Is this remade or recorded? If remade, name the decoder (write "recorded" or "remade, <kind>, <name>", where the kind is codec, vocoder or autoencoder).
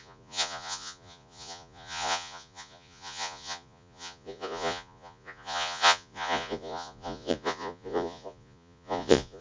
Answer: remade, vocoder, Vocos